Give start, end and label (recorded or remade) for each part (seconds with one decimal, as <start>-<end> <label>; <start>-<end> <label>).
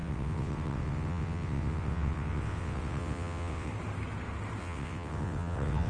0.0-3.7 remade; 3.7-4.6 recorded; 4.6-5.9 remade